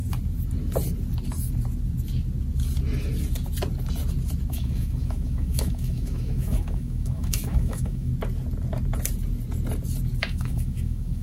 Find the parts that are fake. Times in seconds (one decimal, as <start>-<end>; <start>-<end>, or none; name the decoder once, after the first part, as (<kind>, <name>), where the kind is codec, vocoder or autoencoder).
4.5-8.1 (autoencoder, DAC-VAE); 10.2-11.2